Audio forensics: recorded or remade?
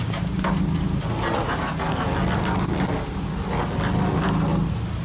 recorded